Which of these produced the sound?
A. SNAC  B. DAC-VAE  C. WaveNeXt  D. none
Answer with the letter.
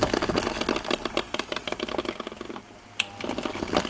D